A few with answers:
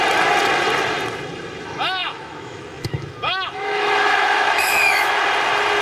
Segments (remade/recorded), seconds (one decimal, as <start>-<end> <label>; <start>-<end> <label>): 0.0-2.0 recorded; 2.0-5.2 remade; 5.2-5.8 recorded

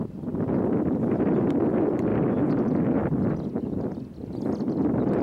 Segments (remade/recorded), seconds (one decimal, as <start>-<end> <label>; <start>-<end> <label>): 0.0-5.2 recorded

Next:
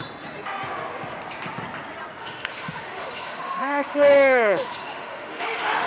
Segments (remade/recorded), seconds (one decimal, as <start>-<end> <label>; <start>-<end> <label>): 0.0-2.2 recorded; 2.2-5.9 remade

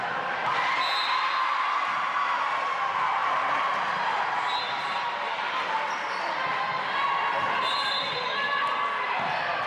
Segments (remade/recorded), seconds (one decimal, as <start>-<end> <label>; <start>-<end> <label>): 0.0-9.7 recorded

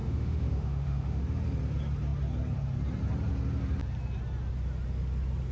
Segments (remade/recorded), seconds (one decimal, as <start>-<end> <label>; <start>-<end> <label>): 0.0-1.2 remade; 1.2-5.5 recorded

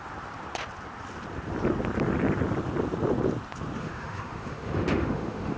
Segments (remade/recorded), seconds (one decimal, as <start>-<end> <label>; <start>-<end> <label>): 0.0-3.8 recorded; 3.8-5.6 remade

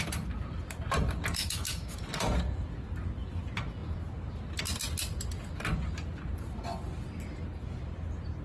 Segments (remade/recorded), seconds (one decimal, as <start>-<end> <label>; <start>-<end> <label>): 0.0-1.4 recorded; 1.4-2.0 remade; 2.0-8.4 recorded

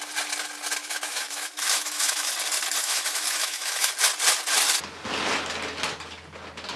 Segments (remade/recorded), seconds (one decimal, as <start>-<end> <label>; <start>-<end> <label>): 0.0-0.8 recorded; 0.8-2.3 remade; 2.3-2.8 recorded; 2.8-3.9 remade; 3.9-6.8 recorded